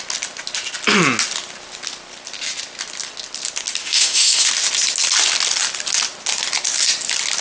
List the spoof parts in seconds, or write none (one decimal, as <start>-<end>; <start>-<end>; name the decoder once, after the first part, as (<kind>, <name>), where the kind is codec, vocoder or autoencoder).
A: 3.8-4.5 (autoencoder, DAC-VAE)